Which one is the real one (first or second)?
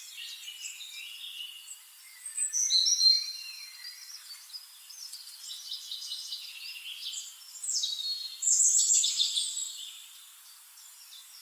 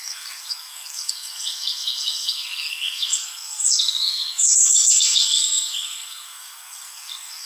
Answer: first